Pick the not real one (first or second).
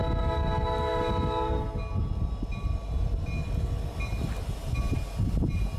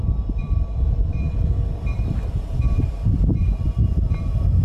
second